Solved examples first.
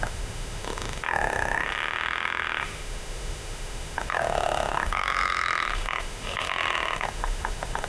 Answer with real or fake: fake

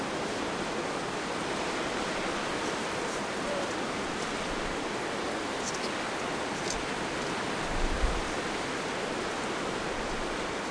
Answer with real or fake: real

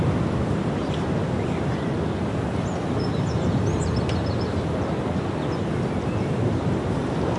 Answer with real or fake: real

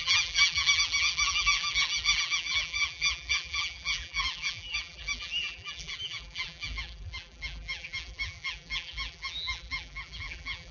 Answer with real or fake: fake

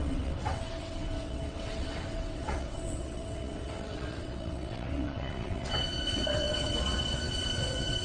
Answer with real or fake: fake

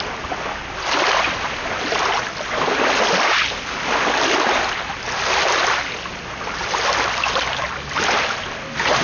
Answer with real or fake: real